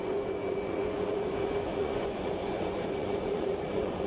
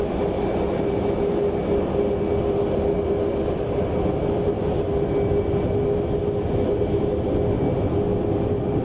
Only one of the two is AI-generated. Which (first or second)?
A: first